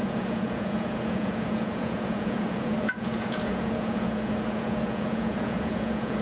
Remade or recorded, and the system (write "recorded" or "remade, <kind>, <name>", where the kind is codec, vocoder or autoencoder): remade, vocoder, Vocos